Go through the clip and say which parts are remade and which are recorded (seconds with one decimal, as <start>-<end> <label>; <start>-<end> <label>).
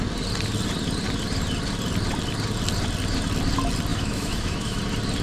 0.0-3.9 recorded; 3.9-4.8 remade; 4.8-5.2 recorded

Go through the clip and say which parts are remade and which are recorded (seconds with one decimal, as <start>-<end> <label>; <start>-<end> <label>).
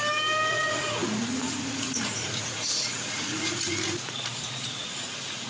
0.0-0.5 recorded; 0.5-5.5 remade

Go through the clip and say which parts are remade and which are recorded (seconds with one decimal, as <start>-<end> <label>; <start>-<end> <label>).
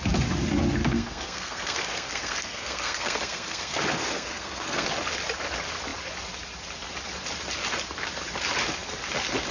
0.0-0.8 recorded; 0.8-4.9 remade; 4.9-9.5 recorded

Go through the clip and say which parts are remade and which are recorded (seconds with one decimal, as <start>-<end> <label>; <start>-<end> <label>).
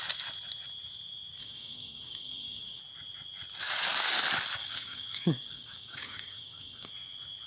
0.0-1.4 recorded; 1.4-2.8 remade; 2.8-4.6 recorded; 4.6-6.9 remade; 6.9-7.5 recorded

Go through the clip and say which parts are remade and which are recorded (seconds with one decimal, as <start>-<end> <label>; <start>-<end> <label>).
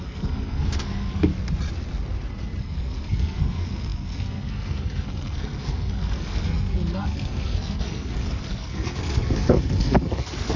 0.0-1.3 remade; 1.3-2.6 recorded; 2.6-10.6 remade